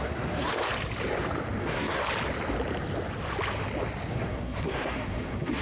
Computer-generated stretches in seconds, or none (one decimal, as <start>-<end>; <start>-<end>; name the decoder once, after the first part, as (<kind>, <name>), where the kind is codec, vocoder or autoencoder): 0.0-0.5 (codec, SNAC); 1.6-2.0; 4.1-5.6

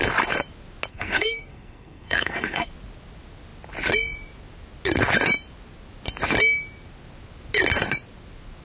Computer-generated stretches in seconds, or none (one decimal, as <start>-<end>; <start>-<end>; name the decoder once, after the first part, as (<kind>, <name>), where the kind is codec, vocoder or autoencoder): 0.9-2.7 (codec, SNAC)